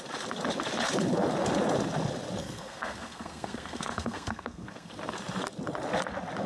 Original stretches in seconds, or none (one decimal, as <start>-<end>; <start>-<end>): 0.0-2.4; 4.9-6.5